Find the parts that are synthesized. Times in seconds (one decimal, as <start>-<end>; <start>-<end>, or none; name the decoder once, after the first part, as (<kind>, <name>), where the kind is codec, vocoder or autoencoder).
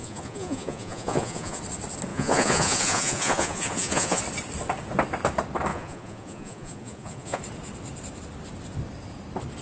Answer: 0.0-1.6 (vocoder, Vocos); 2.1-4.2; 5.7-7.4